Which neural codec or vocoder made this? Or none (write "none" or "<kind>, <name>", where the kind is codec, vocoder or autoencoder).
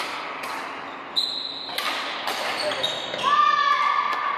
none